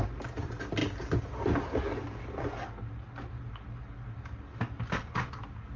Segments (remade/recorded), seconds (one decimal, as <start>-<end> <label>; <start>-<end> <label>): 0.0-5.8 recorded

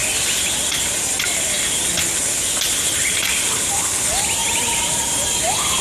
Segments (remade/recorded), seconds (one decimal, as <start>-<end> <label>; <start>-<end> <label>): 0.0-4.4 recorded; 4.4-5.1 remade; 5.1-5.8 recorded

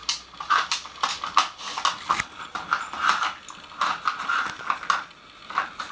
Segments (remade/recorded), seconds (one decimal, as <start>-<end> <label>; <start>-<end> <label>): 0.0-5.9 recorded

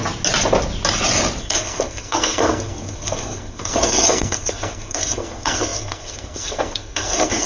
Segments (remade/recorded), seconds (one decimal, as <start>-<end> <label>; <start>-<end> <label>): 0.0-1.4 recorded; 1.4-7.5 remade

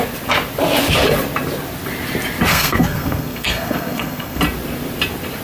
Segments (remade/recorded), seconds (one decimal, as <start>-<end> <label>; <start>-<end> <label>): 0.0-2.5 recorded; 2.5-4.4 remade; 4.4-5.4 recorded

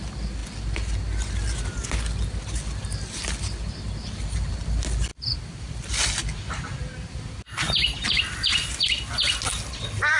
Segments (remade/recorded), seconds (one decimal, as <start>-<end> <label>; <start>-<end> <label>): 0.0-10.2 recorded